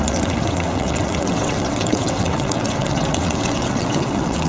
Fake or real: fake